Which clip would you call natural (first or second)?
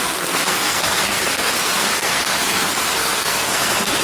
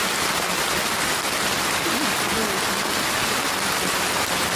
second